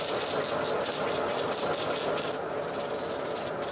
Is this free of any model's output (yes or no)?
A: yes